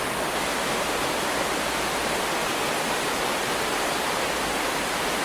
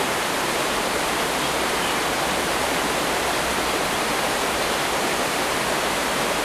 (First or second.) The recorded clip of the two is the first